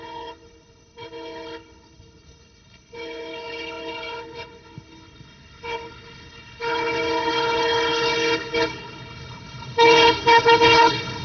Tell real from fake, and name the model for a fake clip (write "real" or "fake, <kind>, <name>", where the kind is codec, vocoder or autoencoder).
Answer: fake, codec, HILCodec